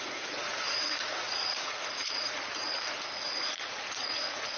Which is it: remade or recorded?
remade